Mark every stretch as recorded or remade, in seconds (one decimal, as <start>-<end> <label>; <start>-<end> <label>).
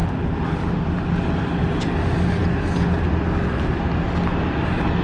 0.0-1.9 remade; 1.9-5.0 recorded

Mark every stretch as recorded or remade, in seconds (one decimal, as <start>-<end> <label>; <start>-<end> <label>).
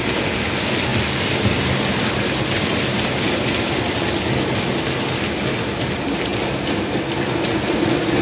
0.0-8.2 recorded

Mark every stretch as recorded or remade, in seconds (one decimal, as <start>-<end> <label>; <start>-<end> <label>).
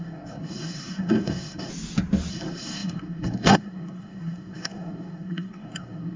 0.0-1.7 remade; 1.7-2.3 recorded; 2.3-6.2 remade